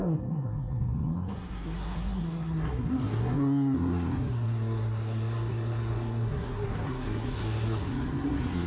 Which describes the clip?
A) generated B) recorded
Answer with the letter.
A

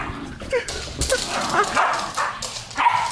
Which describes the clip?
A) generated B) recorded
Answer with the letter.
B